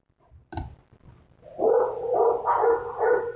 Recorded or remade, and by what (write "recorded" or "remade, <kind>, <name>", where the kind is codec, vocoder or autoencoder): recorded